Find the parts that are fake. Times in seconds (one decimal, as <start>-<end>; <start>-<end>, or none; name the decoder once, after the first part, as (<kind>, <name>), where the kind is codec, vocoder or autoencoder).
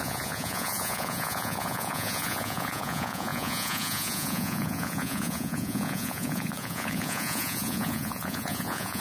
0.0-9.0 (vocoder, Vocos)